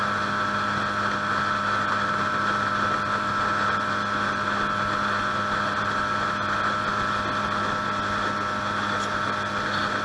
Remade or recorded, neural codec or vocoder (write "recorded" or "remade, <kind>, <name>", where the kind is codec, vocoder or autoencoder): recorded